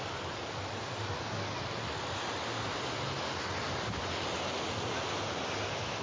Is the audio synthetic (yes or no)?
no